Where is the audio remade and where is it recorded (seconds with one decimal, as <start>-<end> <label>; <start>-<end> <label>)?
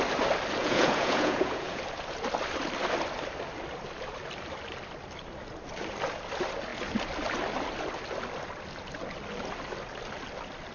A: 0.0-0.6 recorded; 0.6-1.8 remade; 1.8-10.7 recorded